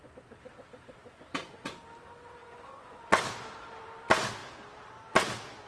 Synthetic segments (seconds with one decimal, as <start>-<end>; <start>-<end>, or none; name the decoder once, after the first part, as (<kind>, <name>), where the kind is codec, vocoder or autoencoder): 1.0-1.7 (vocoder, Vocos); 2.4-3.2